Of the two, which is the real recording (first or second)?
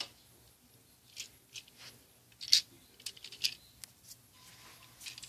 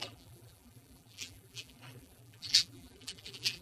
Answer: first